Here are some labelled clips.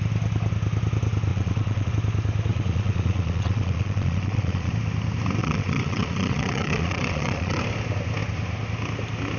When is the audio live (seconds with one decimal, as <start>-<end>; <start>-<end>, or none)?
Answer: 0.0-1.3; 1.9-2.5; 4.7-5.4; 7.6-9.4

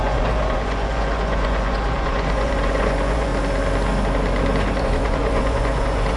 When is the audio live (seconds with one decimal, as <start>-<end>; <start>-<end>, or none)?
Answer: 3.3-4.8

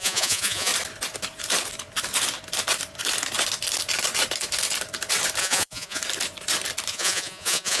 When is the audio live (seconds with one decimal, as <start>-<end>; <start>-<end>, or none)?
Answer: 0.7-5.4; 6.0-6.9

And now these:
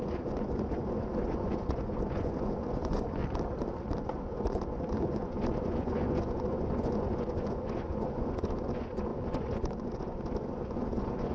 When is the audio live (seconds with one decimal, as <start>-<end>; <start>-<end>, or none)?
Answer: 3.2-4.0

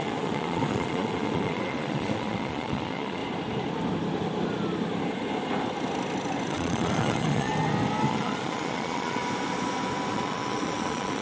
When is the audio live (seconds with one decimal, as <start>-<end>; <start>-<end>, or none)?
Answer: 3.2-6.5; 7.5-8.1; 9.2-10.1